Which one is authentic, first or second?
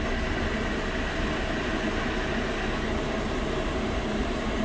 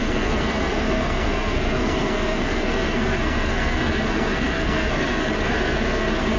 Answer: first